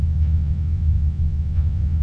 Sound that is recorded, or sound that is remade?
remade